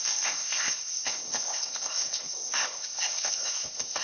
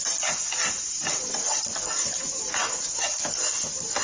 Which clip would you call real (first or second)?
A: second